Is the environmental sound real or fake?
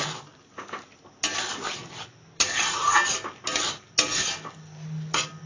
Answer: real